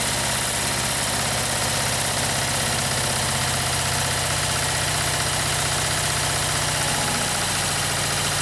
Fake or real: real